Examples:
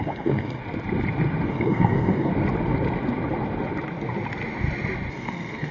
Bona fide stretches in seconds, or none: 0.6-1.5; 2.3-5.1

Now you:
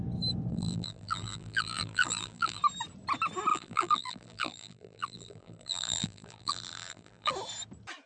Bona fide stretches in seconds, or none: 0.0-0.5; 2.6-3.5; 7.3-8.1

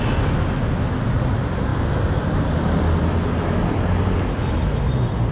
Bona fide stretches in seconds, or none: 0.0-5.3